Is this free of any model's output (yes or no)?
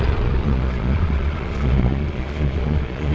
no